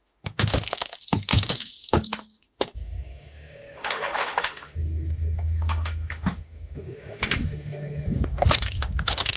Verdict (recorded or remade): remade